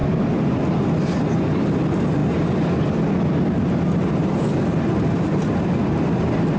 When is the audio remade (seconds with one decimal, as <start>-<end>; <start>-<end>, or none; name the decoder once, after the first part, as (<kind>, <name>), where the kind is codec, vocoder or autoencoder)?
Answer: none